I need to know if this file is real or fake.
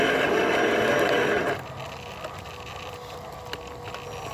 real